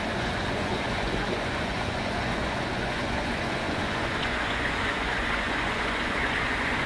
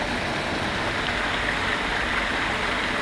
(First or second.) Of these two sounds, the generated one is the first